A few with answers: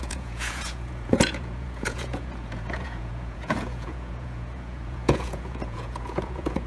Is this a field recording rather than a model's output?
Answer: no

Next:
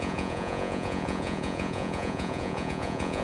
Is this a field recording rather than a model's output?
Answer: no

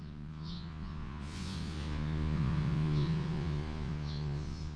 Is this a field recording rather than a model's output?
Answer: no